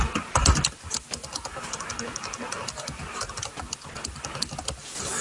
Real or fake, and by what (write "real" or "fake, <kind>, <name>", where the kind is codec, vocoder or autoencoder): real